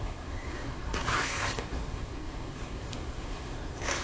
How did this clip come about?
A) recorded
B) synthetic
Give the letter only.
B